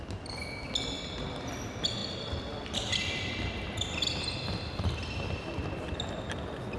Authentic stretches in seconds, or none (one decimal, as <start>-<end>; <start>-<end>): 0.0-6.8